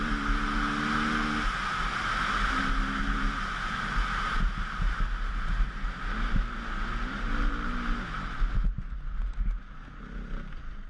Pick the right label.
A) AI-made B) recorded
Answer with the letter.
B